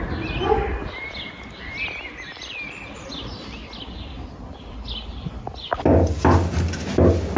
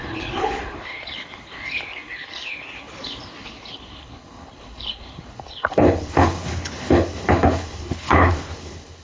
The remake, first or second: second